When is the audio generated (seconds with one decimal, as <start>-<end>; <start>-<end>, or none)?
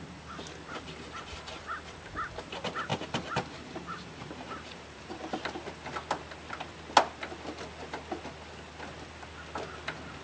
2.9-5.3